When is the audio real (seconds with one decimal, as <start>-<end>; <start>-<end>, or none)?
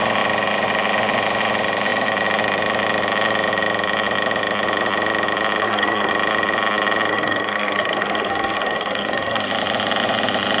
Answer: 0.0-5.6; 6.1-7.1; 9.5-10.6